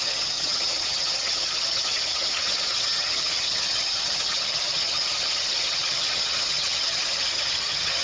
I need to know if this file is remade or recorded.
remade